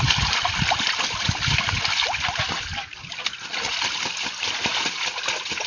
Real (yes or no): yes